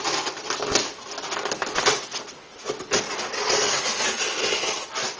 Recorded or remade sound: recorded